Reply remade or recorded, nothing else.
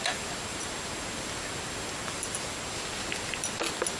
recorded